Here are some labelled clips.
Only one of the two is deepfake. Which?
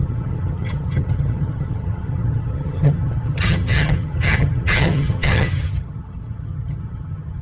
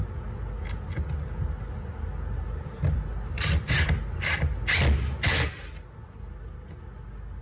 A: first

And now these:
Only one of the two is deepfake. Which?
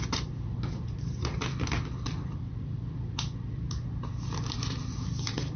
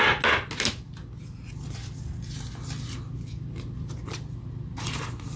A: first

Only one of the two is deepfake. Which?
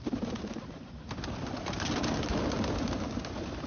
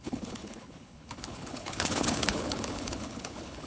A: second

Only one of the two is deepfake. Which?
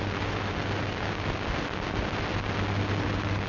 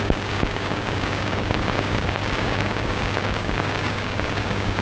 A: second